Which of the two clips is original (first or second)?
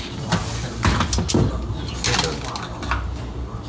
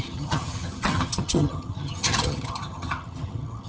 first